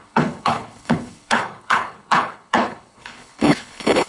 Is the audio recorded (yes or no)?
no